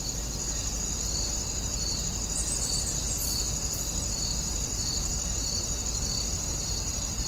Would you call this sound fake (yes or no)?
no